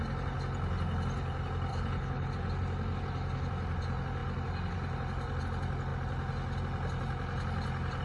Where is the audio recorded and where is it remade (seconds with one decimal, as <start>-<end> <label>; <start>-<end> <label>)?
0.0-1.7 recorded; 1.7-2.3 remade; 2.3-8.0 recorded